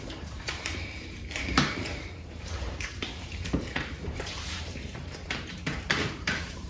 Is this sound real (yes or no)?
no